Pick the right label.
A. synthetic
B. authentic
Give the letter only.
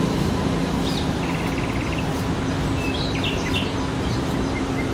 B